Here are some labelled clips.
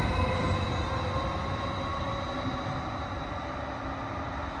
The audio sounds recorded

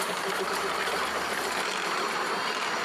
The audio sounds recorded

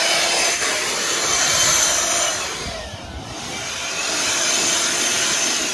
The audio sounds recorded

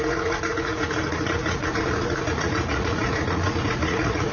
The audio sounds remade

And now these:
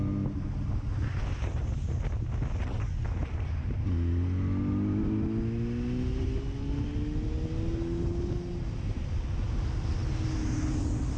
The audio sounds recorded